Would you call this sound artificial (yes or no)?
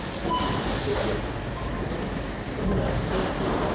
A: no